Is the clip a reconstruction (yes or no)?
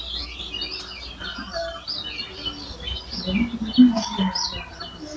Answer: no